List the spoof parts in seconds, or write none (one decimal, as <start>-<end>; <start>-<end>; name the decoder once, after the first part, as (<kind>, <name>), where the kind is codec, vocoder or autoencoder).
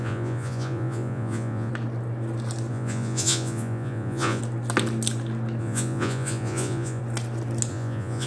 0.0-1.7 (vocoder, Vocos); 2.7-4.4; 5.6-7.0; 7.7-8.3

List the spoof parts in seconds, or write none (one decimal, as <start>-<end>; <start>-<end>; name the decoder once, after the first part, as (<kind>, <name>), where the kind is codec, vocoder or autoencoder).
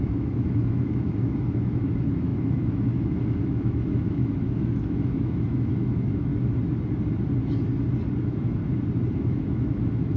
0.0-6.3 (autoencoder, DAC-VAE); 8.1-8.6; 9.1-10.2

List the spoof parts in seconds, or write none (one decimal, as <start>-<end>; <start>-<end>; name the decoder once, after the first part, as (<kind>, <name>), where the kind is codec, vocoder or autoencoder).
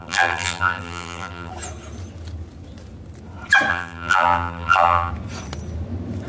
0.0-1.5 (vocoder, BigVGAN v2); 3.7-5.1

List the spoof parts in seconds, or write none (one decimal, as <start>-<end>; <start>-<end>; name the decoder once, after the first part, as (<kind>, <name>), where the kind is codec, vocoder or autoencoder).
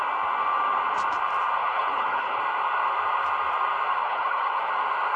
1.6-2.4 (codec, HILCodec); 4.0-4.7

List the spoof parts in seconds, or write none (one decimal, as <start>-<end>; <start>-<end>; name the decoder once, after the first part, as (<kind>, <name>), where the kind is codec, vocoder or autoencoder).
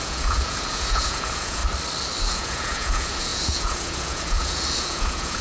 0.0-1.6 (vocoder, Vocos); 2.2-5.4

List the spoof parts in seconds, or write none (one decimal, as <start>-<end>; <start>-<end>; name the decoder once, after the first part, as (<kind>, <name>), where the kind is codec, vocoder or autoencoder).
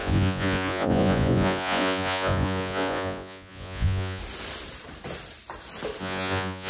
0.0-4.2 (vocoder, Vocos); 6.0-6.7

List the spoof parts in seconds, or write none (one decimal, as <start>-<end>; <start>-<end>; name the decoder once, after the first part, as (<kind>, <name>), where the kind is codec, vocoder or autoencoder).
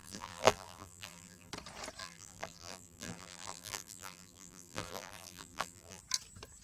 0.0-1.5 (vocoder, BigVGAN v2); 2.0-6.0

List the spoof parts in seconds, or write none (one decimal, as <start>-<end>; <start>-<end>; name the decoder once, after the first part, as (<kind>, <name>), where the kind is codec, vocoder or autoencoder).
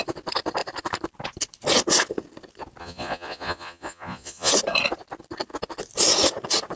2.8-4.5 (vocoder, Vocos)